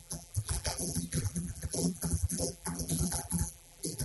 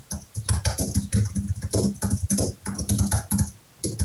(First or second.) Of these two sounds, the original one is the second